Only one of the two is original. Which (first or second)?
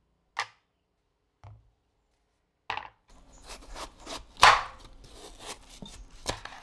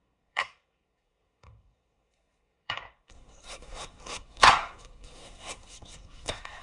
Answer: first